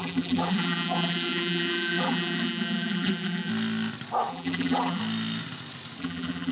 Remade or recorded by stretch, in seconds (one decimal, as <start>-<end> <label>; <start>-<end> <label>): 0.0-3.5 remade; 3.5-4.3 recorded; 4.3-5.0 remade; 5.0-6.0 recorded; 6.0-6.5 remade